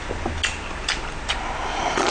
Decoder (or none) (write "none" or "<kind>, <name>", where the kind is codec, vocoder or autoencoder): none